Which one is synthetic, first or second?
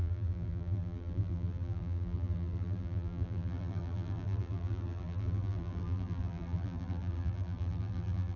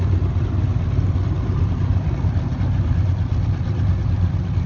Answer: first